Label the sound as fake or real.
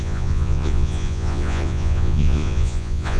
fake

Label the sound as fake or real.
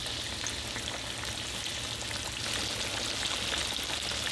real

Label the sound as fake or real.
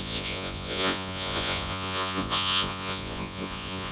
fake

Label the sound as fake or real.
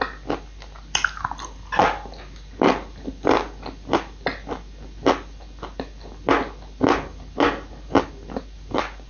real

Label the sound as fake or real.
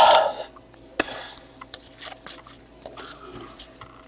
real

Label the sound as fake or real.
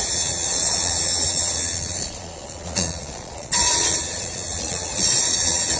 fake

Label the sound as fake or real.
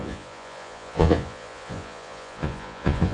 fake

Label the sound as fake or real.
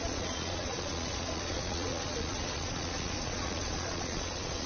fake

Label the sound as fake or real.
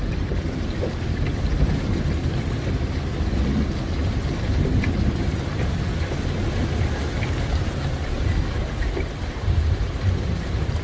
real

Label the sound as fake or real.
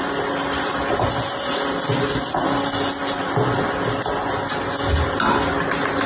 real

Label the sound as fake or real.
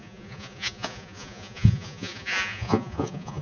fake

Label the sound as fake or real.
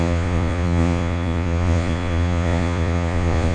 fake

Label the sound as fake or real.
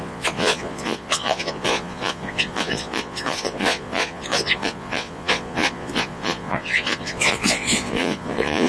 fake